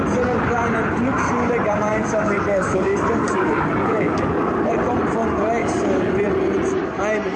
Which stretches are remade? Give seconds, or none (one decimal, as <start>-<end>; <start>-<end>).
1.9-4.5; 5.6-6.1